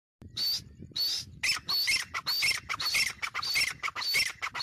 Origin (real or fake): real